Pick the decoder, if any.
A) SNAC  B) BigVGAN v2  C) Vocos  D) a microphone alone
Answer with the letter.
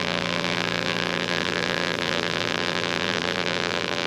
B